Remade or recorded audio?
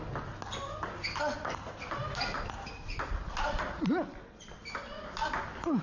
recorded